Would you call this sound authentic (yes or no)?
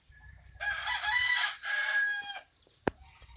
no